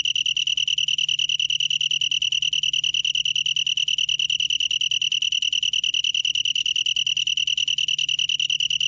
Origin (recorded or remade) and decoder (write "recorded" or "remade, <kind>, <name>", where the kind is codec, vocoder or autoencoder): recorded